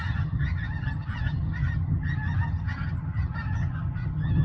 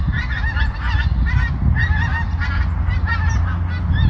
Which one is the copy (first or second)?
first